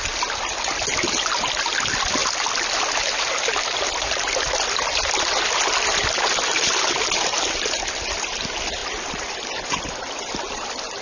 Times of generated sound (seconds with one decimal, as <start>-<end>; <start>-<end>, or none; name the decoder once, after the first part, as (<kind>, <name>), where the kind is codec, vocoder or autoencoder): 8.8-11.0 (vocoder, BigVGAN v2)